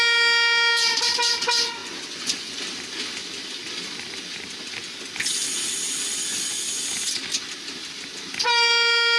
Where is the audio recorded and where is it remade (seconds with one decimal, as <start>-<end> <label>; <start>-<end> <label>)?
0.0-1.8 recorded; 1.8-2.6 remade; 2.6-9.2 recorded